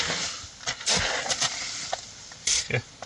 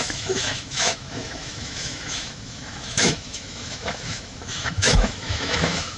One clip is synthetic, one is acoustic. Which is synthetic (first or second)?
second